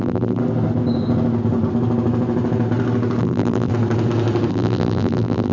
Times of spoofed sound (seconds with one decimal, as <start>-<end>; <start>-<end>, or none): 0.0-0.4; 3.2-3.7; 4.5-5.5